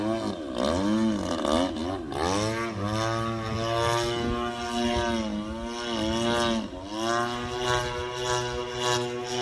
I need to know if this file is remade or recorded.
recorded